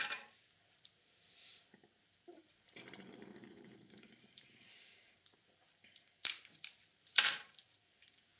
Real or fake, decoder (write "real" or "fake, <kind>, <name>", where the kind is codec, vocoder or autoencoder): fake, vocoder, BigVGAN v2